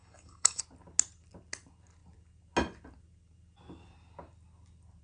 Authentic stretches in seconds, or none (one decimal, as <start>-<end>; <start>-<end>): 0.6-5.0